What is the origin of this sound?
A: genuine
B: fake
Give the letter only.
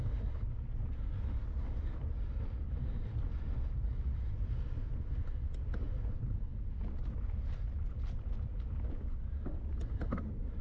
A